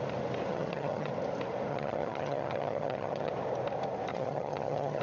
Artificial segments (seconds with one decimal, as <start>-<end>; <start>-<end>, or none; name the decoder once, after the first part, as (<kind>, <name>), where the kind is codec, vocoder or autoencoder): 0.5-1.1 (vocoder, HiFi-GAN); 1.7-3.3; 4.1-5.0